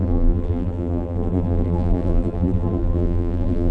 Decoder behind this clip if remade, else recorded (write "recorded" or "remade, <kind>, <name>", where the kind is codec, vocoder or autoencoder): remade, vocoder, BigVGAN v2